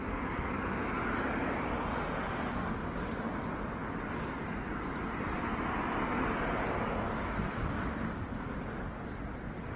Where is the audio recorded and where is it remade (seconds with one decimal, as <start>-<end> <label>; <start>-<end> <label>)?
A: 0.0-9.8 recorded